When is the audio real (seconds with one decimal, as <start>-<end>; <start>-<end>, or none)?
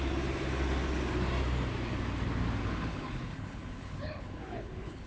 0.0-2.6